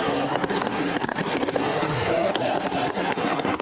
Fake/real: fake